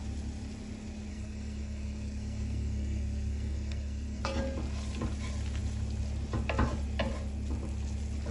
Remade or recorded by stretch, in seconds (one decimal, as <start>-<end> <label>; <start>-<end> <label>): 0.0-1.1 recorded; 1.1-4.2 remade; 4.2-8.3 recorded